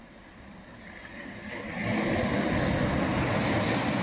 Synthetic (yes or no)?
no